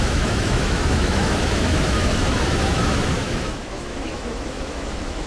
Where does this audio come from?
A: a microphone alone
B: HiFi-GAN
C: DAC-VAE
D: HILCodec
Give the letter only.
C